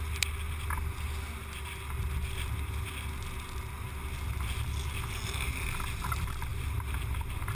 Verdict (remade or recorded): recorded